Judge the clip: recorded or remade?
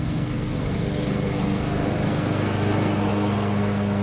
remade